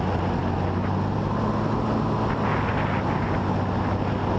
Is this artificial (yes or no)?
no